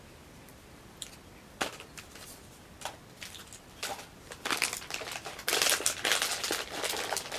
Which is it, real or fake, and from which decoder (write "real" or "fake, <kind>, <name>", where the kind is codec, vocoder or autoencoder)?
fake, vocoder, BigVGAN v2